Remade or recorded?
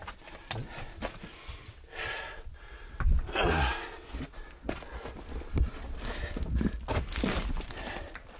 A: recorded